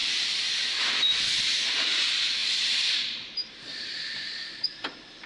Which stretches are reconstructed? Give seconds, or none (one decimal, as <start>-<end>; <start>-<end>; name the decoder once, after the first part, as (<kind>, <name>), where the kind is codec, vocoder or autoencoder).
0.0-0.8 (vocoder, BigVGAN v2); 2.4-4.2

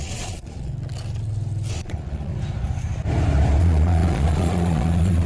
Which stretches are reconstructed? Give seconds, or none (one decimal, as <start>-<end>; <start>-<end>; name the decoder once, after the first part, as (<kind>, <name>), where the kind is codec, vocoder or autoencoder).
0.0-0.7 (vocoder, Vocos); 1.7-2.3; 3.6-5.3

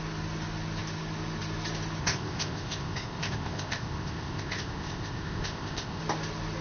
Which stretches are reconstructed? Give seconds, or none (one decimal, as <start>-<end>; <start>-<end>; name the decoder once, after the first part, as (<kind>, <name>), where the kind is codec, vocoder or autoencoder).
2.0-6.0 (codec, ZipCodec)